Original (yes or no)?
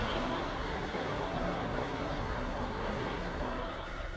no